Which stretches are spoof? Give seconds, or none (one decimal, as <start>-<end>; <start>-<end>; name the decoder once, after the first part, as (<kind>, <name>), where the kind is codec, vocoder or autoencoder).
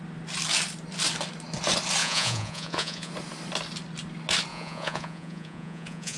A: 2.0-3.1 (vocoder, Vocos); 4.5-6.2